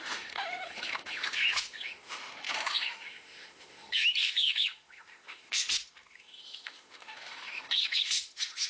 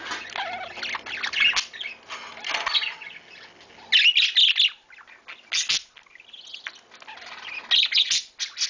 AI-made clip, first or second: first